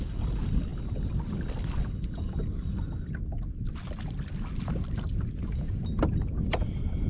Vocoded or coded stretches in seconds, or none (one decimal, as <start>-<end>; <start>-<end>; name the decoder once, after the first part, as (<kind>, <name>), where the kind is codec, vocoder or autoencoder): none